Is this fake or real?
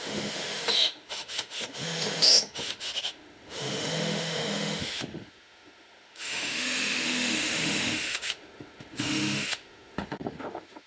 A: fake